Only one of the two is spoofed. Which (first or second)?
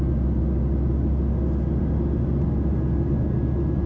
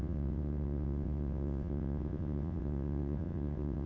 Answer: second